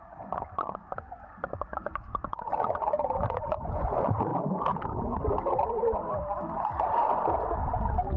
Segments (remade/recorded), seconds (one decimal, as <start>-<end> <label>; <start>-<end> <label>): 0.0-4.3 remade; 4.3-8.2 recorded